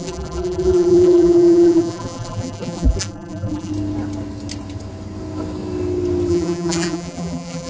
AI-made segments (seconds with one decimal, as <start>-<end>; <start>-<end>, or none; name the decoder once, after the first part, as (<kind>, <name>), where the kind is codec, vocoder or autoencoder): 0.0-3.7 (vocoder, BigVGAN v2); 6.3-7.7